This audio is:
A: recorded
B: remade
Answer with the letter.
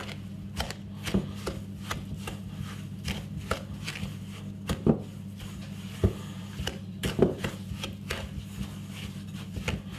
B